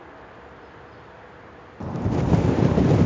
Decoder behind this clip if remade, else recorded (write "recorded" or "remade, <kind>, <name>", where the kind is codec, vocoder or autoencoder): recorded